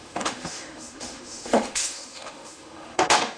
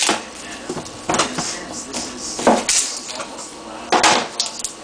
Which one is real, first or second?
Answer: second